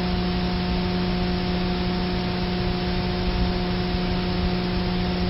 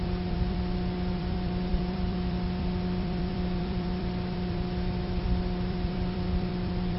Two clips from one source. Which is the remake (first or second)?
second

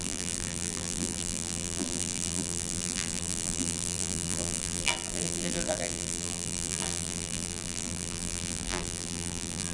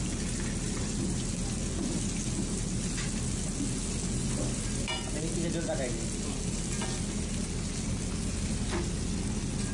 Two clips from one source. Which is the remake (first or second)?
first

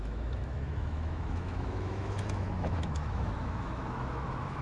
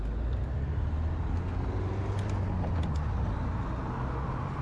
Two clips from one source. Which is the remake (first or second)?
first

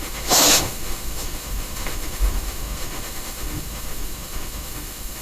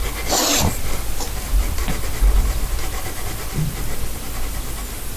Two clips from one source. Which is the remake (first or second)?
first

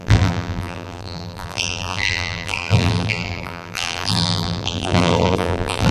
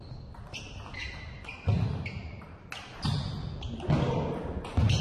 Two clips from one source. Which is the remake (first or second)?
first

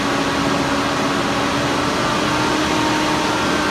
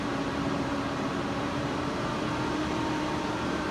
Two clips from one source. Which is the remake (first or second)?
second